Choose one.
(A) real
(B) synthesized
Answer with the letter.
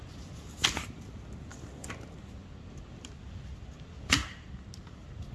A